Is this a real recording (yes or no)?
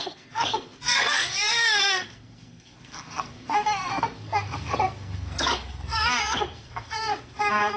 no